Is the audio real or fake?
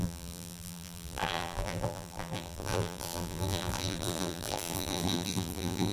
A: fake